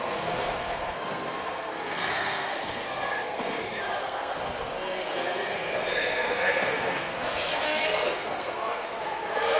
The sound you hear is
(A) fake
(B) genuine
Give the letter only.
A